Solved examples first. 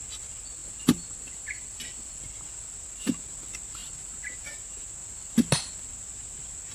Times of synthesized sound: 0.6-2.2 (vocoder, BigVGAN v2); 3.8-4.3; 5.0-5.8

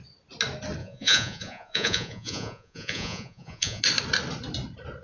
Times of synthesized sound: 0.8-3.8 (vocoder, Vocos)

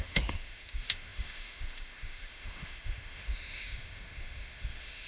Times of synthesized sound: 0.0-5.1 (autoencoder, DAC-VAE)